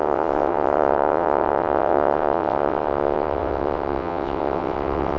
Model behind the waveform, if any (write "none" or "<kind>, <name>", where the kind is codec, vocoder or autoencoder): vocoder, WaveNeXt